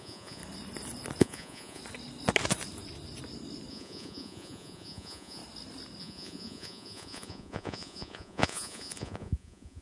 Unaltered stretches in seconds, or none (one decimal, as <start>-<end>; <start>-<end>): 0.4-1.2; 1.8-3.7; 5.4-6.0